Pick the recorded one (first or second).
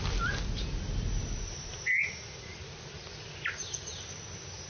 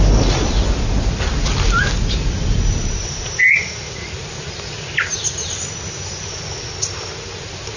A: first